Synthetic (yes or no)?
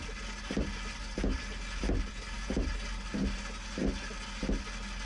no